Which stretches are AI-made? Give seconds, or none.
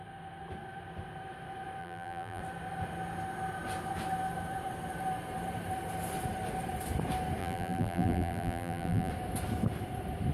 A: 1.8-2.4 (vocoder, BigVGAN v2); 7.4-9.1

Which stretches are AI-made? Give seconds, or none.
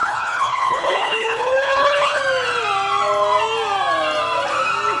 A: 0.0-2.2 (codec, HILCodec)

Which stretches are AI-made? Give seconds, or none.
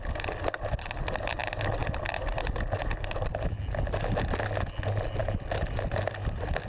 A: none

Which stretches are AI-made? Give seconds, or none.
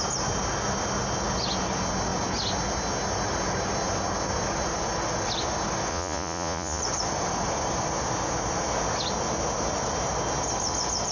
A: 5.9-6.8 (vocoder, Vocos)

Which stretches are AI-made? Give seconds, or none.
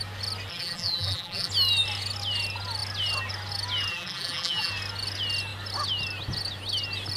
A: 0.5-1.5 (vocoder, BigVGAN v2); 3.9-4.7